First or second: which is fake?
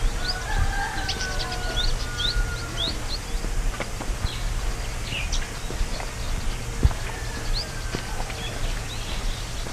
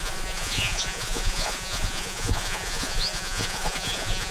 second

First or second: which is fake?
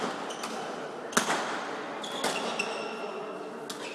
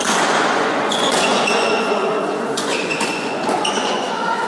second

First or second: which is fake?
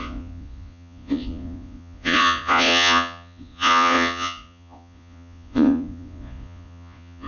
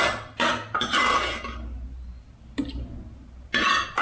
first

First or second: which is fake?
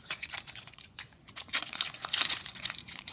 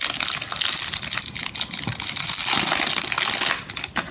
first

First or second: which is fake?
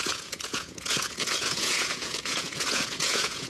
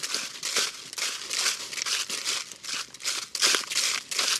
first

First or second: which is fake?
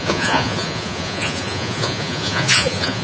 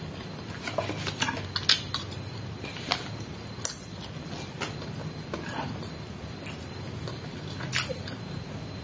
first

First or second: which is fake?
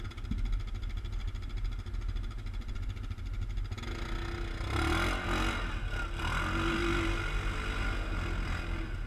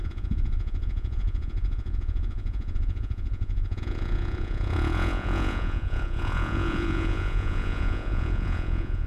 second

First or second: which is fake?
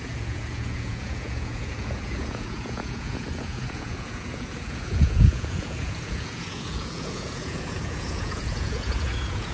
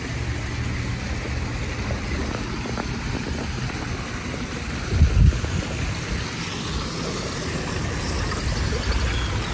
first